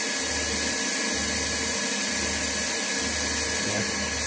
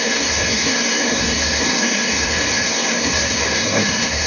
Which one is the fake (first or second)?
second